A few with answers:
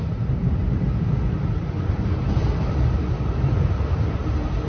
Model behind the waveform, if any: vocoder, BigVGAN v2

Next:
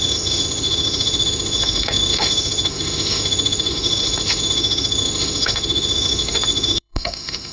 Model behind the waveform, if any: autoencoder, DAC-VAE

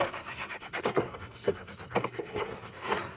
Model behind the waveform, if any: codec, SNAC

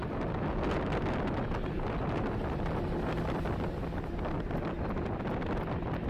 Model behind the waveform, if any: none